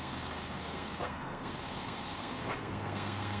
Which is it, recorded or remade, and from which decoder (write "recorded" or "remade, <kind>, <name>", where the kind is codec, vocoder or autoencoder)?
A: remade, codec, SNAC